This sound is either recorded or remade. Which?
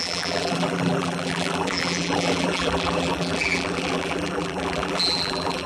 remade